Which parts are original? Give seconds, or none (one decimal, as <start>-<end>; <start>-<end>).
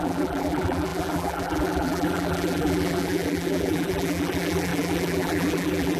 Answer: none